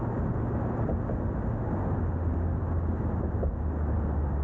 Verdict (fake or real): real